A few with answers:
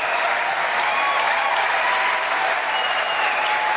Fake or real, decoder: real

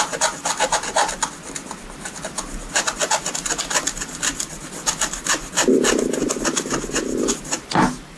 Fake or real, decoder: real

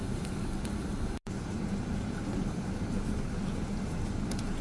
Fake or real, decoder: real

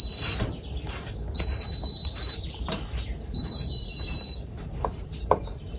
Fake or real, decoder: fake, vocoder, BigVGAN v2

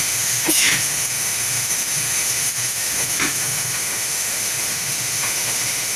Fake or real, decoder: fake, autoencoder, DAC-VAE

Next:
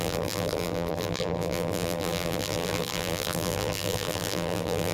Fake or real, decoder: fake, vocoder, BigVGAN v2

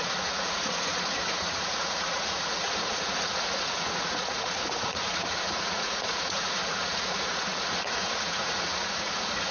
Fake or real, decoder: fake, vocoder, Vocos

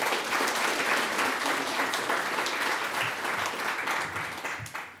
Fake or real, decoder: real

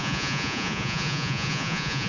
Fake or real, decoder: fake, vocoder, Vocos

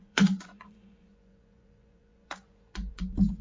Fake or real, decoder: fake, vocoder, Vocos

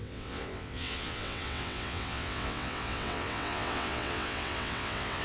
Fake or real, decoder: fake, vocoder, WaveNeXt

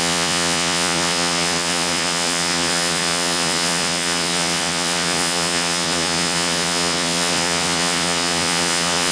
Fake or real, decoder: fake, vocoder, Vocos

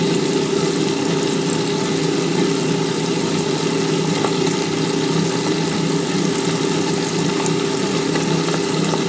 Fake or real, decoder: real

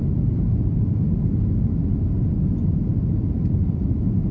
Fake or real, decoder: real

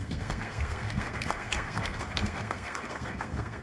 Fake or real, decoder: fake, codec, SNAC